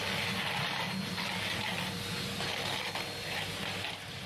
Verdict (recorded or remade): recorded